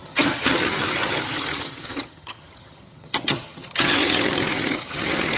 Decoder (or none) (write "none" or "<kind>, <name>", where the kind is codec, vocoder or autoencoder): vocoder, HiFi-GAN